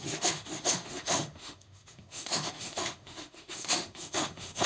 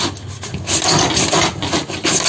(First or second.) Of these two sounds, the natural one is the second